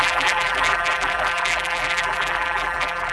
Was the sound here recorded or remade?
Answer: remade